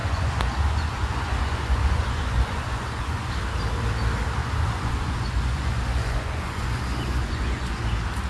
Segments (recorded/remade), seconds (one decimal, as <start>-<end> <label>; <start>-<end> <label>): 0.0-3.3 remade; 3.3-4.4 recorded; 4.4-7.8 remade; 7.8-8.3 recorded